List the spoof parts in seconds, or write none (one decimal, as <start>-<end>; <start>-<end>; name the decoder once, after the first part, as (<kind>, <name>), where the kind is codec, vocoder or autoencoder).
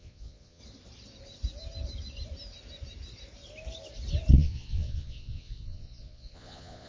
0.0-0.6 (vocoder, Vocos); 4.3-6.9